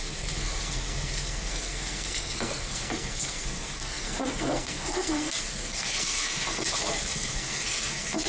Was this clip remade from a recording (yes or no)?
yes